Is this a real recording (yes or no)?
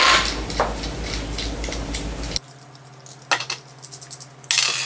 yes